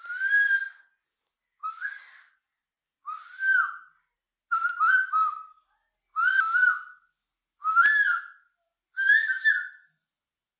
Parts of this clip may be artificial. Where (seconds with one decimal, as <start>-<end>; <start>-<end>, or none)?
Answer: none